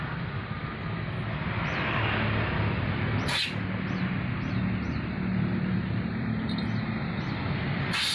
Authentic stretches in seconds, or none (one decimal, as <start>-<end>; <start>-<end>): 0.0-8.1